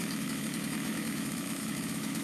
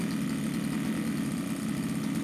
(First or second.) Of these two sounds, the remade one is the first